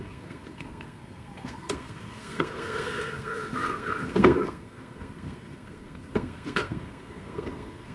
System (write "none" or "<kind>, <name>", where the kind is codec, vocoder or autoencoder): codec, SNAC